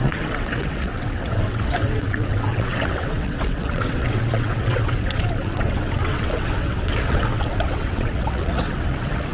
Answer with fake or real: fake